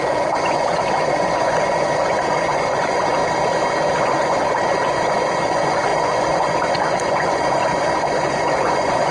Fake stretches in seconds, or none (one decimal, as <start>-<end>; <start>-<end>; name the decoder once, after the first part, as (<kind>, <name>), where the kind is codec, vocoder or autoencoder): 0.0-3.2 (vocoder, Vocos); 4.0-9.1